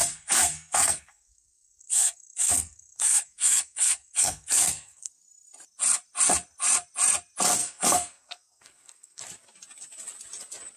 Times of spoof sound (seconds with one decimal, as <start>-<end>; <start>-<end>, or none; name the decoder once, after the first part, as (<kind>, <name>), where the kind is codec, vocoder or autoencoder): 0.0-5.1 (codec, SNAC); 7.6-9.2